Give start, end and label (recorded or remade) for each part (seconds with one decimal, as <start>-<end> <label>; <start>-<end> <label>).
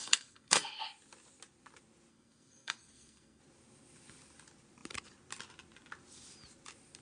0.0-0.8 remade; 0.8-2.1 recorded; 2.1-3.4 remade; 3.4-7.0 recorded